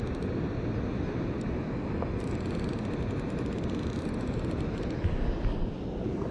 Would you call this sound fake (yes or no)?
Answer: no